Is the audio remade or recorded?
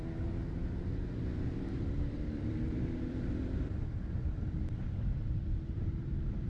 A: remade